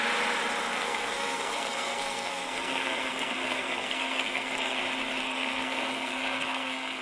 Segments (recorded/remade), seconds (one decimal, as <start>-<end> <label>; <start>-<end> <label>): 0.0-0.7 recorded; 0.7-4.8 remade; 4.8-5.2 recorded; 5.2-7.0 remade